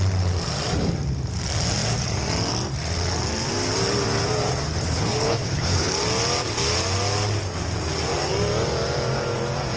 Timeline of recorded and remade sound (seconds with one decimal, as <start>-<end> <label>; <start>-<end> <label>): 0.0-4.8 recorded; 4.8-5.9 remade; 5.9-9.8 recorded